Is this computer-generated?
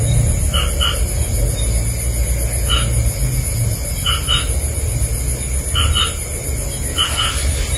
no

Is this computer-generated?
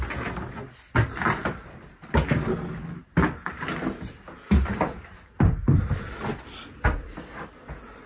no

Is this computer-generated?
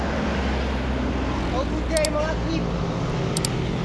no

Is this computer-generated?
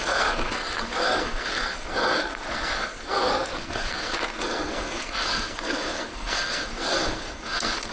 yes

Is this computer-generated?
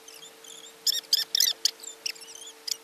no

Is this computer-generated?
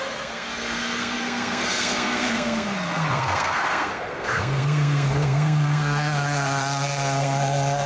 yes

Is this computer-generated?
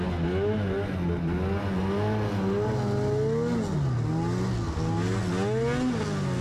no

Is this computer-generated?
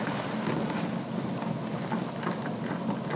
no